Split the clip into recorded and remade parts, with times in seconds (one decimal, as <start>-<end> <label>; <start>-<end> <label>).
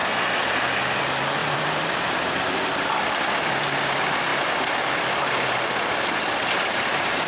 0.0-1.4 recorded; 1.4-3.6 remade; 3.6-4.3 recorded; 4.3-4.8 remade; 4.8-7.3 recorded